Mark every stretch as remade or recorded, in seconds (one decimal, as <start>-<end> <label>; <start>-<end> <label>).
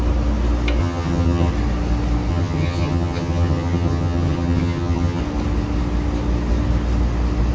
0.0-0.8 recorded; 0.8-1.5 remade; 1.5-2.3 recorded; 2.3-5.2 remade; 5.2-7.5 recorded